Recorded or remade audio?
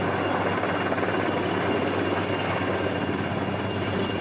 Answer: recorded